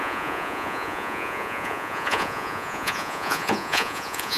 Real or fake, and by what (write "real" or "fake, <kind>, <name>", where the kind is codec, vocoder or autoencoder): fake, vocoder, Vocos